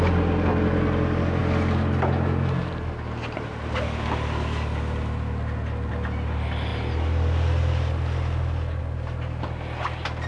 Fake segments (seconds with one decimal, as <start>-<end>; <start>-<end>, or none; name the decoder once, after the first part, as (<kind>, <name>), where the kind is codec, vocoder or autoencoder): none